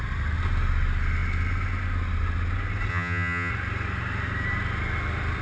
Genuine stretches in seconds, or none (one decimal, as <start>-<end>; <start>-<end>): 0.0-2.9; 3.5-5.4